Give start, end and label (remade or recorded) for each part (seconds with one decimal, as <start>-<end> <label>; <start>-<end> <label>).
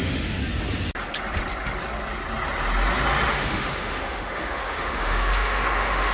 0.0-0.4 remade; 0.4-3.3 recorded; 3.3-6.1 remade